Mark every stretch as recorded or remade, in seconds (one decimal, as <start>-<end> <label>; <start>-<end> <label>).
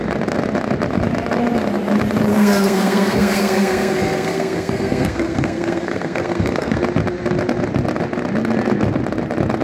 0.0-2.3 recorded; 2.3-6.8 remade; 6.8-9.6 recorded